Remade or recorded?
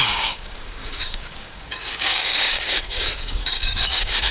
remade